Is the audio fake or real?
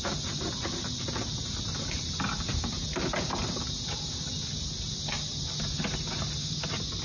real